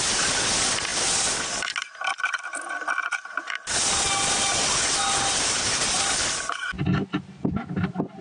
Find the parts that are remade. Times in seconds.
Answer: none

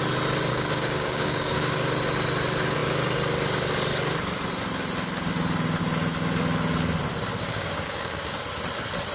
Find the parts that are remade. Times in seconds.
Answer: 0.5-1.9 (codec, DAC); 7.5-8.4